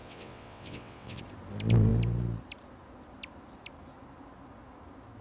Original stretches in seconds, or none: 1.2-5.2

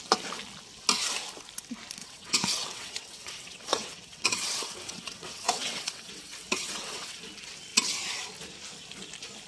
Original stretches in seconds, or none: 0.0-2.0; 7.2-9.5